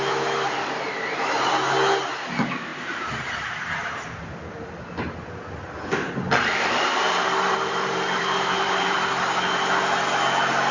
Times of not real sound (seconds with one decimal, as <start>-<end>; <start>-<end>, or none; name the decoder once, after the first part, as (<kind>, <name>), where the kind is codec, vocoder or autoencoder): 2.7-3.7 (vocoder, BigVGAN v2); 6.0-9.0